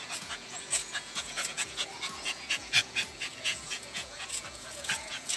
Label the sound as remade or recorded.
remade